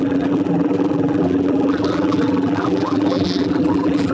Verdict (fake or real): fake